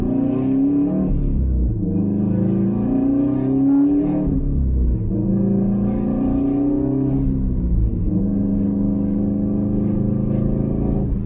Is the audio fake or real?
real